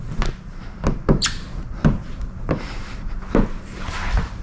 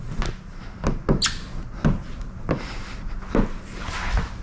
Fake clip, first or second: first